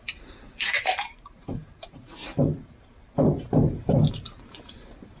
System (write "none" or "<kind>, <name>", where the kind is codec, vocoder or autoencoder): vocoder, BigVGAN v2